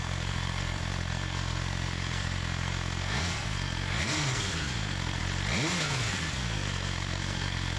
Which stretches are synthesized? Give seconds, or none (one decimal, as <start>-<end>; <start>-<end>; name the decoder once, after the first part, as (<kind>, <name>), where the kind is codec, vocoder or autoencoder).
0.0-5.2 (codec, SNAC); 5.8-7.8